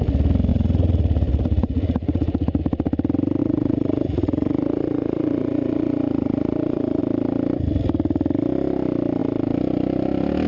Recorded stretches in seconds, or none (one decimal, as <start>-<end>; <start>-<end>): 0.0-0.5; 2.6-3.4; 7.0-10.5

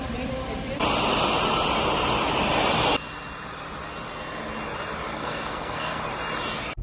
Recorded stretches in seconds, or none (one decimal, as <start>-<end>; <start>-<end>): 0.0-5.1; 6.1-6.8

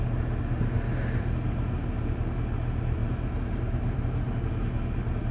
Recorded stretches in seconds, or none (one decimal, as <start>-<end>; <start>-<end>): 0.0-0.9; 1.9-3.0; 4.4-5.3